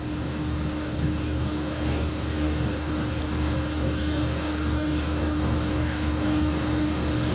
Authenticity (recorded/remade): remade